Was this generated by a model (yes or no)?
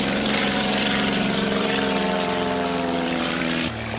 yes